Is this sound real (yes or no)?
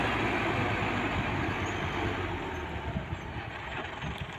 yes